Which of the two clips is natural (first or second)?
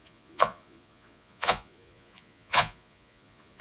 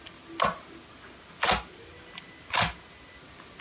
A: second